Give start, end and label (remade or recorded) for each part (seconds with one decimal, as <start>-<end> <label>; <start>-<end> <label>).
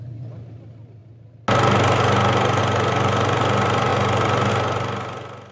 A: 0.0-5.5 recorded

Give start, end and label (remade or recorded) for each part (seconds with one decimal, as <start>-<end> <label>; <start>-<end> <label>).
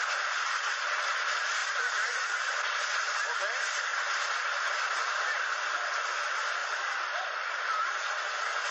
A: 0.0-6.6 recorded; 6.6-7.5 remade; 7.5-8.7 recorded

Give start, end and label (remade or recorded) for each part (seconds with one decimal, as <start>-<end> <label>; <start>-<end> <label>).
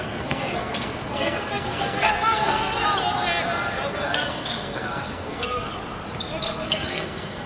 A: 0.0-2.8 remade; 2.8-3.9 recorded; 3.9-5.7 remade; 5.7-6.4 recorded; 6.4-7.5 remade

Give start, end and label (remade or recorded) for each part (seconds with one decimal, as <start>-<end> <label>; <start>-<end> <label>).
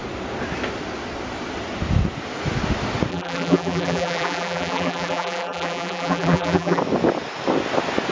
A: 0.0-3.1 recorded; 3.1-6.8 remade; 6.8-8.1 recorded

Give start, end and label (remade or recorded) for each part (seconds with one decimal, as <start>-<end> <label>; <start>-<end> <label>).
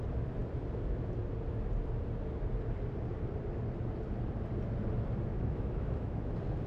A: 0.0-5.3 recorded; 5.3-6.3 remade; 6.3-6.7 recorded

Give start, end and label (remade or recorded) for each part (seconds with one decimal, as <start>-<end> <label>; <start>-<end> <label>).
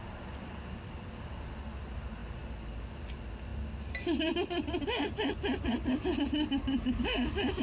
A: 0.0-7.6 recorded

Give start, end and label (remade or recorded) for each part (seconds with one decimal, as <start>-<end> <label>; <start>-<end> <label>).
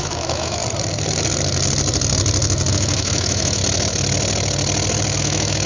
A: 0.0-0.6 remade; 0.6-2.7 recorded; 2.7-3.6 remade; 3.6-5.2 recorded; 5.2-5.7 remade